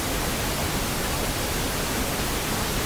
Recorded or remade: recorded